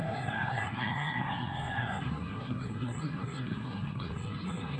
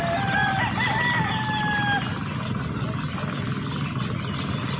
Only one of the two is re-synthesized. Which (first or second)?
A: first